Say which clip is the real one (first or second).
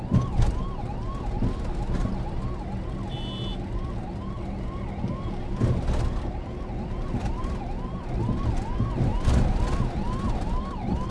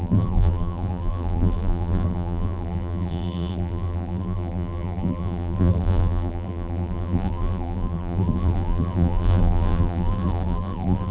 first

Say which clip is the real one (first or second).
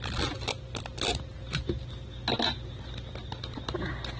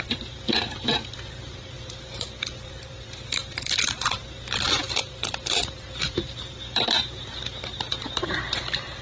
first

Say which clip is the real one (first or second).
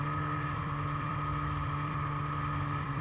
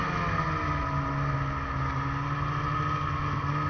second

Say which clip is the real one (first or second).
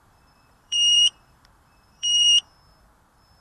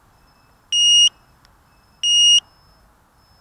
second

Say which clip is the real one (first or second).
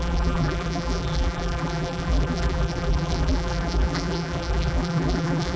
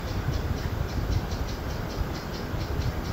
second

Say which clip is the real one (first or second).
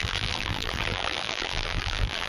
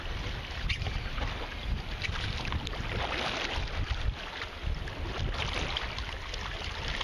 second